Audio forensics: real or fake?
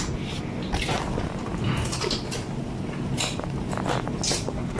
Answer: real